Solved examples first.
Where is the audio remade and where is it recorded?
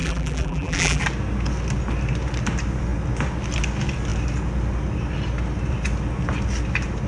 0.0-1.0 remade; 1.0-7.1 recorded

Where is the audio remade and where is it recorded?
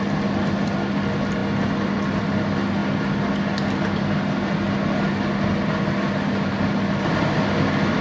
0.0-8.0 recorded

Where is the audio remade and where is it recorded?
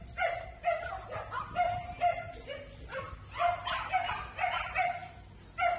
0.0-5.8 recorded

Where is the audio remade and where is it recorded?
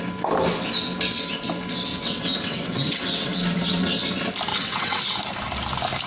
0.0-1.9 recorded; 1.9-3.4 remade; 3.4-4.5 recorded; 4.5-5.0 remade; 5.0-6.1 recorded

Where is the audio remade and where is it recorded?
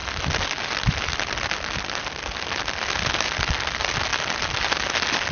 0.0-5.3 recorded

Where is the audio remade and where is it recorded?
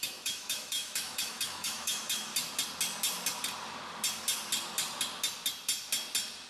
0.0-2.3 remade; 2.3-6.5 recorded